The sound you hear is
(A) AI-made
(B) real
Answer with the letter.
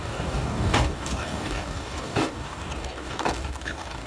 A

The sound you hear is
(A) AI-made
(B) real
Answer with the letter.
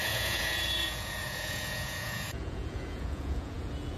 A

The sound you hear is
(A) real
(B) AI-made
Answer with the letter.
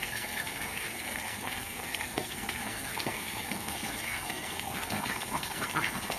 B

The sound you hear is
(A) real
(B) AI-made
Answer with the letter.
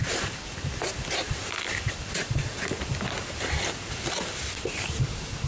A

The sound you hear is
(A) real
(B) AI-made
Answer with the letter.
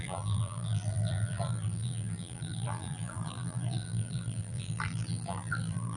B